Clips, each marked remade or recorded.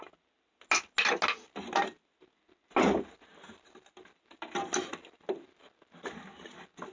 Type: recorded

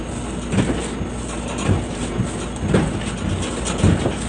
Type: recorded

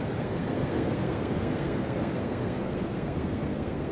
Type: remade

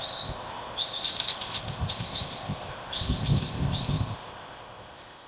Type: remade